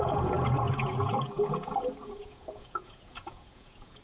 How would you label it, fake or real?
fake